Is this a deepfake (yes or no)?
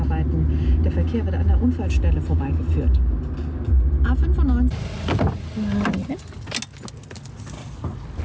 no